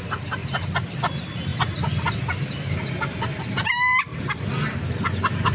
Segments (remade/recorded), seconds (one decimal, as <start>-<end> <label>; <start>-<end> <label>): 0.0-5.5 recorded